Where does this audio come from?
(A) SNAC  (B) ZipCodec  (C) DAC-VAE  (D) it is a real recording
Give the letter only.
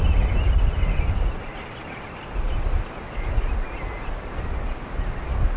D